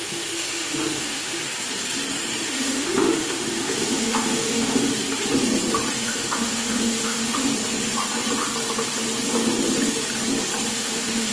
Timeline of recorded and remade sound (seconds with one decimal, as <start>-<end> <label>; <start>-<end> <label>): 0.0-1.4 remade; 1.4-2.5 recorded; 2.5-4.9 remade; 4.9-5.9 recorded; 5.9-7.5 remade; 7.5-10.7 recorded; 10.7-11.3 remade